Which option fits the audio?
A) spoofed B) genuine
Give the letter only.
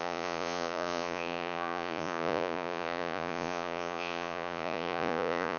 A